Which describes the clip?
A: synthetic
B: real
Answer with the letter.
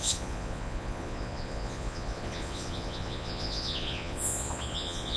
A